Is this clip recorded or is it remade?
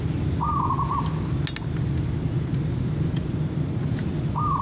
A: recorded